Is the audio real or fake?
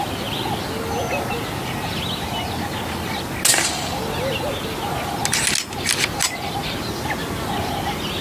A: real